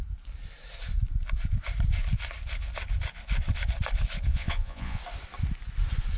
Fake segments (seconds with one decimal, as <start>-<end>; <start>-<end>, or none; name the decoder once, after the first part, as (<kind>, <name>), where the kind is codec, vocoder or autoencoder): 4.3-5.0 (vocoder, Vocos)